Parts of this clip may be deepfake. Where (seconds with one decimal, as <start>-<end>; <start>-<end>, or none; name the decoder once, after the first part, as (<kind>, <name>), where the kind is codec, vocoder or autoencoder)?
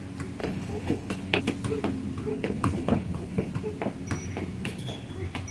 0.4-1.4 (codec, HILCodec); 2.3-3.5; 4.6-5.1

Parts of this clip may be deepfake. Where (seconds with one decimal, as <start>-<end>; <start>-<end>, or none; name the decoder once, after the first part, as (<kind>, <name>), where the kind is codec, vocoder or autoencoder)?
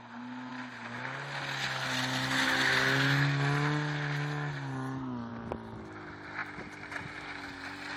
none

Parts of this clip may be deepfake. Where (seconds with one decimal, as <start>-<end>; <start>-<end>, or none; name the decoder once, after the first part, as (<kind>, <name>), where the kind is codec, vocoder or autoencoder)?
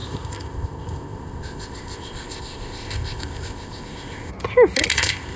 0.0-4.3 (codec, ZipCodec); 4.9-5.4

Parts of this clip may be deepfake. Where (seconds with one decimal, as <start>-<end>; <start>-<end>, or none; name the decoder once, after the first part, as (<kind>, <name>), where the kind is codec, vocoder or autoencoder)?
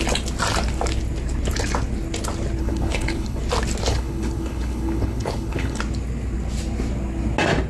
2.6-3.4 (codec, HILCodec); 3.9-5.8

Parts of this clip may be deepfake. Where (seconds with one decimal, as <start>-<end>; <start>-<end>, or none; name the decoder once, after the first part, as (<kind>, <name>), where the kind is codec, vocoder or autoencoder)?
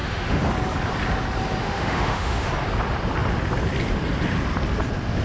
0.0-0.5 (autoencoder, DAC-VAE); 1.6-2.5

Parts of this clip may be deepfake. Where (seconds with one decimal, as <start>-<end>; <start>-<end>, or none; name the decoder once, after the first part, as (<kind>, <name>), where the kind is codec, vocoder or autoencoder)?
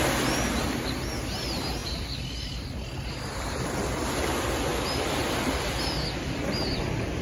4.7-5.7 (vocoder, BigVGAN v2)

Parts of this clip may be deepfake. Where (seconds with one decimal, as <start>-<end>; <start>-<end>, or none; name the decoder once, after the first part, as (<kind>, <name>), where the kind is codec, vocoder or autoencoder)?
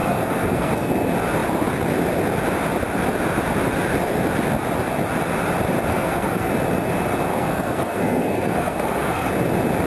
0.0-0.9 (codec, SNAC); 5.9-6.5; 7.3-9.3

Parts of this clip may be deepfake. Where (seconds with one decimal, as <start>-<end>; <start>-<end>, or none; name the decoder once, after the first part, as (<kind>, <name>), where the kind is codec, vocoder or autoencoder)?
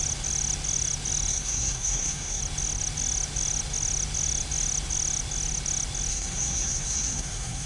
1.3-2.4 (codec, SNAC); 6.1-7.7